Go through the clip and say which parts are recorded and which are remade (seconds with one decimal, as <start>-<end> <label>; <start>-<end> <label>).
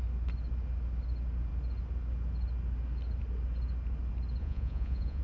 0.0-4.4 recorded; 4.4-5.2 remade